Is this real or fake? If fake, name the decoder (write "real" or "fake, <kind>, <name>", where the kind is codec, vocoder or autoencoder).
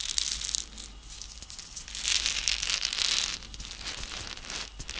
real